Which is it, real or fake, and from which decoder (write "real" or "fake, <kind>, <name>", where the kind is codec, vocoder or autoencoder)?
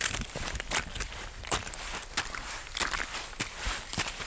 real